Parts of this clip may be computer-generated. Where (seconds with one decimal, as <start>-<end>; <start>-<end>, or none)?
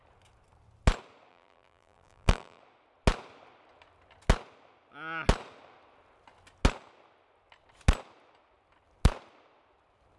1.3-2.6